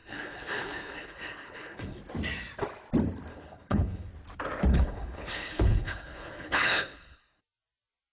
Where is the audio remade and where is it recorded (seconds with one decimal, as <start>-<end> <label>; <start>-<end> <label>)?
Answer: 0.0-2.0 remade; 2.0-3.3 recorded; 3.3-4.1 remade; 4.1-4.7 recorded; 4.7-7.4 remade; 7.4-8.1 recorded